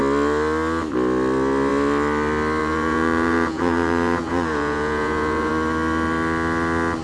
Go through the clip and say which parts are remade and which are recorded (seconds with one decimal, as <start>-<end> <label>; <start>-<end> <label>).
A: 0.0-2.6 recorded; 2.6-5.5 remade; 5.5-7.0 recorded